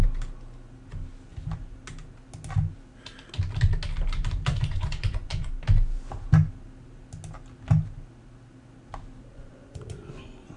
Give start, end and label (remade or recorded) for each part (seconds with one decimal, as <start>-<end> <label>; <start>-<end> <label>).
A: 0.0-4.5 recorded; 4.5-5.5 remade; 5.5-9.3 recorded; 9.3-10.6 remade